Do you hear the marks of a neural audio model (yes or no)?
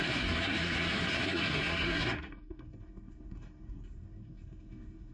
yes